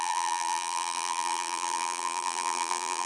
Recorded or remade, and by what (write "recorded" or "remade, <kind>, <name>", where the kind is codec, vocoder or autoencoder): remade, vocoder, BigVGAN v2